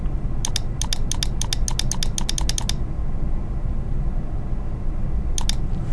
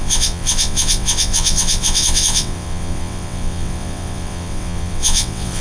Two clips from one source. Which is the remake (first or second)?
second